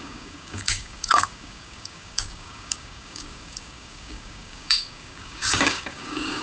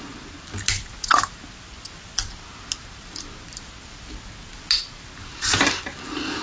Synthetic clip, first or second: first